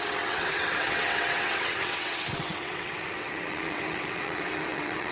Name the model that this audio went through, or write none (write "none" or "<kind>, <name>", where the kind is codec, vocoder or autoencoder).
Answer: vocoder, WaveNeXt